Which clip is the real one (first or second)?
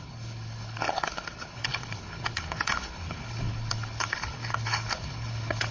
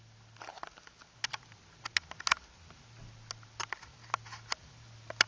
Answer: second